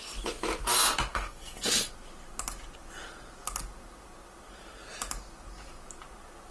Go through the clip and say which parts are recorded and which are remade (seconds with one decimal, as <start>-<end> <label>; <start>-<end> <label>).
0.0-1.1 recorded; 1.1-1.7 remade; 1.7-6.5 recorded